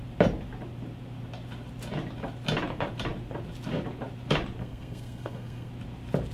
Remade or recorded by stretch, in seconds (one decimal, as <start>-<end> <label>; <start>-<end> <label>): 0.0-4.6 recorded; 4.6-5.7 remade; 5.7-6.3 recorded